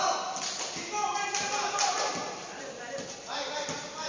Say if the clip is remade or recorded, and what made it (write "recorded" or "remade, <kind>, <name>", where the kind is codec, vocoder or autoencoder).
recorded